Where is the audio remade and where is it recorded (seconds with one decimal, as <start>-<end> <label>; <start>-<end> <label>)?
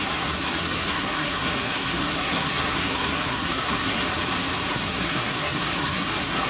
0.0-4.0 remade; 4.0-4.7 recorded; 4.7-6.5 remade